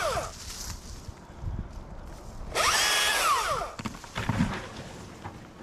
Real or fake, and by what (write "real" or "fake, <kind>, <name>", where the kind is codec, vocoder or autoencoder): real